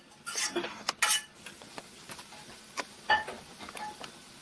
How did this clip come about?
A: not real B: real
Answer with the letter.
B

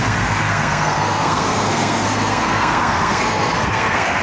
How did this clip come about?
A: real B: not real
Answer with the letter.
B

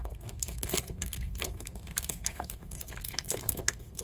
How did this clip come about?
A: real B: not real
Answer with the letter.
B